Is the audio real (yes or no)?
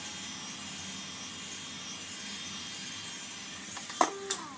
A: yes